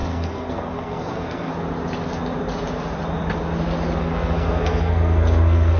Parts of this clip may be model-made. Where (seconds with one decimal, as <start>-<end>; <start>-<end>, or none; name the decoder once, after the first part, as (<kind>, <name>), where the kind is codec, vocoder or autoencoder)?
0.0-1.5 (codec, SNAC); 4.0-5.8